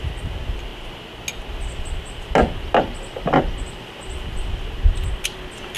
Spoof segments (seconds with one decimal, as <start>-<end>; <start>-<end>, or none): none